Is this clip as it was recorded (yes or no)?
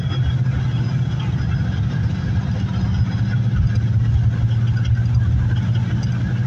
yes